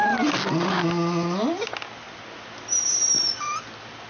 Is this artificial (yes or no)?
no